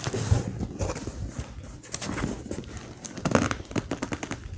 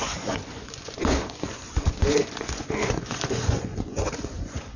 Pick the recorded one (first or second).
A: first